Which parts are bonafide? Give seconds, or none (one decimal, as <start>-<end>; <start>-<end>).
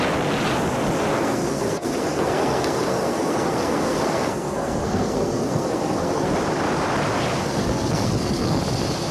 0.0-1.1; 6.3-7.4; 8.6-9.1